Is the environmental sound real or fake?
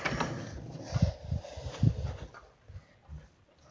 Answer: real